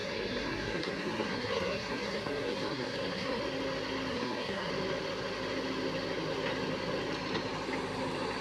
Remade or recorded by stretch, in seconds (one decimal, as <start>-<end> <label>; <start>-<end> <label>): 0.0-3.4 remade; 3.4-4.1 recorded; 4.1-4.7 remade; 4.7-8.4 recorded